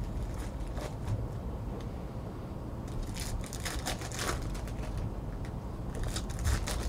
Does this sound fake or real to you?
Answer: fake